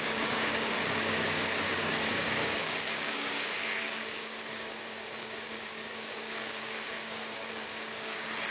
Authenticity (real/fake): fake